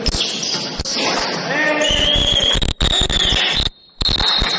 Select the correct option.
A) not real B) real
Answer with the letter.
B